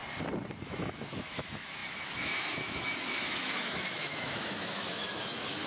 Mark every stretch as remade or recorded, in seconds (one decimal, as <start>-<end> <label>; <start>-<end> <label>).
0.0-0.6 recorded; 0.6-5.7 remade